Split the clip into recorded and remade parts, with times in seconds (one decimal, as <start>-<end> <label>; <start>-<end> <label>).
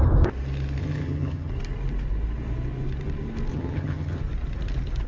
0.0-0.8 recorded; 0.8-1.5 remade; 1.5-3.5 recorded; 3.5-4.2 remade; 4.2-5.1 recorded